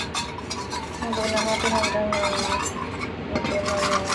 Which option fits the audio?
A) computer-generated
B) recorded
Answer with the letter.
B